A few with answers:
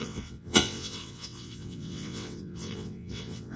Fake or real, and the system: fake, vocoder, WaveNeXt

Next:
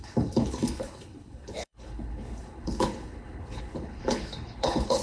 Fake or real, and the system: fake, codec, HILCodec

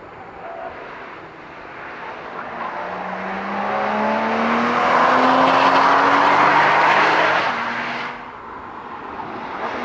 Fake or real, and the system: real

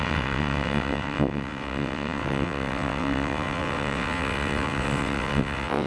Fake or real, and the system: fake, vocoder, WaveNeXt